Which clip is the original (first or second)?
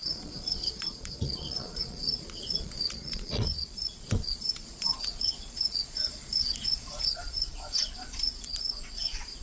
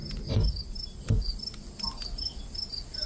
second